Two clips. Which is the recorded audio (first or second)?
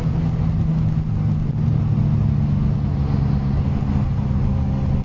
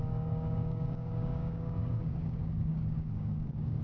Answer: first